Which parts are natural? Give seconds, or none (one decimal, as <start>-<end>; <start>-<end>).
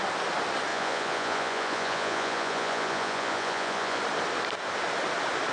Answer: 0.0-0.7; 4.0-5.5